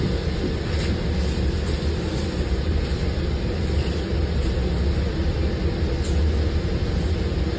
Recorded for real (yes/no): yes